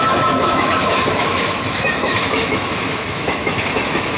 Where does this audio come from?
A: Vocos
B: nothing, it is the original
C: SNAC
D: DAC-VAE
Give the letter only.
D